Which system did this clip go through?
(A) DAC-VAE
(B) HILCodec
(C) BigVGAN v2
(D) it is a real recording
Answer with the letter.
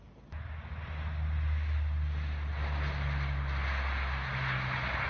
D